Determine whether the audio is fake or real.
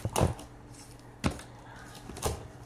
real